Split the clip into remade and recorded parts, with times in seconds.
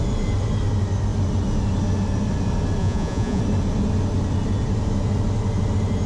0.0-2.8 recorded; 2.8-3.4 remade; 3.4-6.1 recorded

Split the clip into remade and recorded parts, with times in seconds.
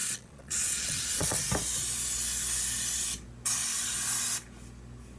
0.0-1.4 remade; 1.4-5.2 recorded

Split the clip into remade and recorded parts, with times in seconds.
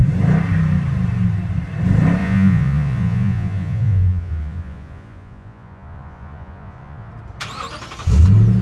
0.0-2.2 recorded; 2.2-7.1 remade; 7.1-8.6 recorded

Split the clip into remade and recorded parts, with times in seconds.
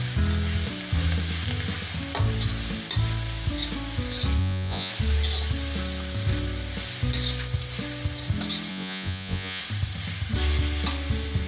0.0-4.4 recorded; 4.4-4.9 remade; 4.9-8.7 recorded; 8.7-9.6 remade; 9.6-11.5 recorded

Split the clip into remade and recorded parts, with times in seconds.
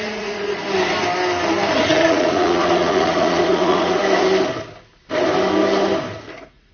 0.0-0.6 remade; 0.6-1.8 recorded; 1.8-4.0 remade; 4.0-6.3 recorded; 6.3-6.7 remade